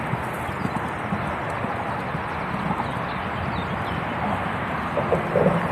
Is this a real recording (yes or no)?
yes